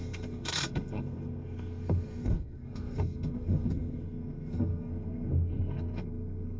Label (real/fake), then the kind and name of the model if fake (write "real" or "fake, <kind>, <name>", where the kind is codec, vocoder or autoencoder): fake, codec, SNAC